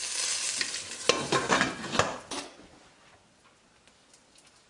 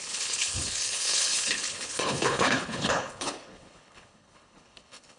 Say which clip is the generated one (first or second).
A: second